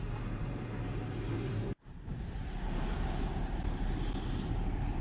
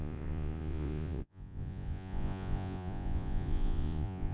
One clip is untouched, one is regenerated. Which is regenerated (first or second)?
second